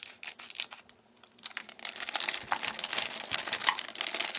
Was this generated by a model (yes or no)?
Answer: no